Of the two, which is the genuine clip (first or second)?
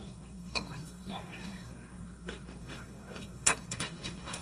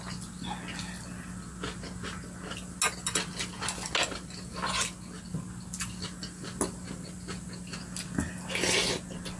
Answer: second